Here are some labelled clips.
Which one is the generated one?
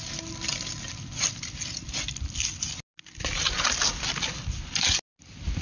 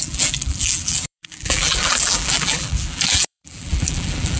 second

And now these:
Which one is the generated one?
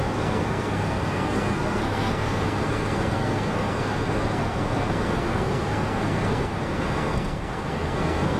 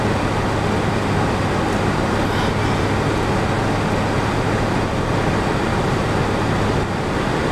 first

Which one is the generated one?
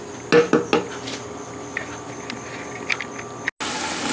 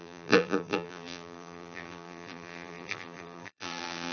second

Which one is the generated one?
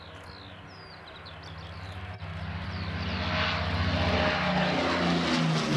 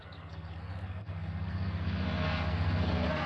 second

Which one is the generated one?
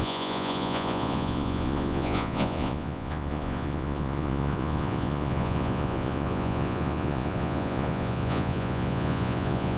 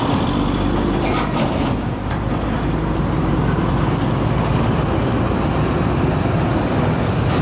first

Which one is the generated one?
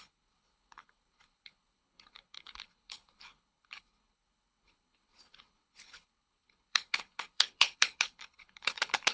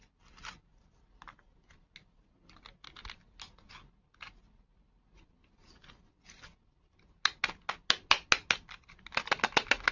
first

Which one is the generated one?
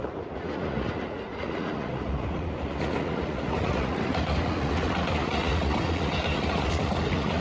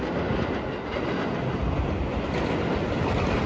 first